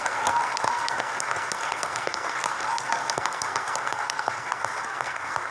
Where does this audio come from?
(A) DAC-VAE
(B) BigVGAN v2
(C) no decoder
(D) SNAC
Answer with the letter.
D